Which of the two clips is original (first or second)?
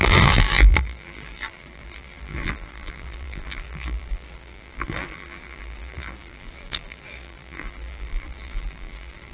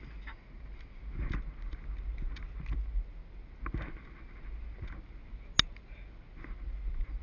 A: second